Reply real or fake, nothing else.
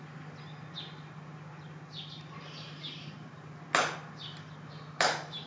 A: real